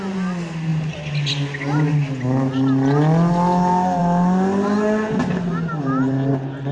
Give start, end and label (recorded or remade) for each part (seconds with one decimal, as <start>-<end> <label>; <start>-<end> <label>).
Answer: 0.0-6.7 recorded